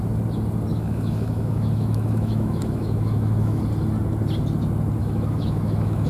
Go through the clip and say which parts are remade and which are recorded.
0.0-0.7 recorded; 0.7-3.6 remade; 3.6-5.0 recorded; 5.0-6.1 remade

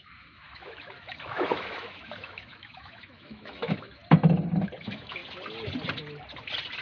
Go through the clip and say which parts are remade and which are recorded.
0.0-4.0 remade; 4.0-4.8 recorded; 4.8-5.2 remade; 5.2-6.8 recorded

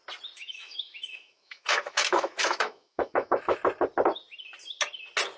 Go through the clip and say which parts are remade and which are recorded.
0.0-0.4 recorded; 0.4-3.6 remade; 3.6-5.4 recorded

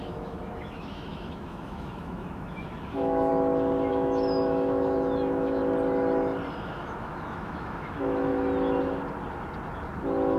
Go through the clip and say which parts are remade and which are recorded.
0.0-3.3 remade; 3.3-3.9 recorded; 3.9-5.6 remade; 5.6-6.6 recorded; 6.6-8.3 remade; 8.3-10.4 recorded

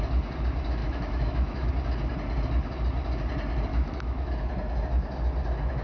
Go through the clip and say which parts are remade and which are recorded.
0.0-0.8 recorded; 0.8-1.7 remade; 1.7-3.7 recorded; 3.7-4.3 remade; 4.3-5.8 recorded